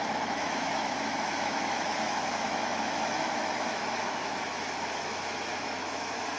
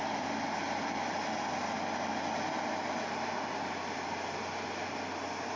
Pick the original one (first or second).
second